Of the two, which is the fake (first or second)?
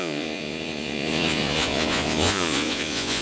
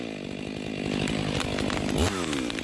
first